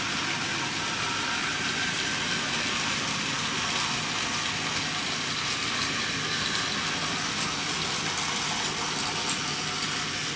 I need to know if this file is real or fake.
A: real